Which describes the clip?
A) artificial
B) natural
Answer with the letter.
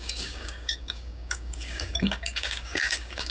A